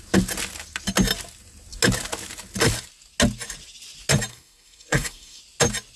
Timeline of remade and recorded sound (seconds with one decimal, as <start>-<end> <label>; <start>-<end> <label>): 0.0-4.3 recorded; 4.3-5.4 remade; 5.4-6.0 recorded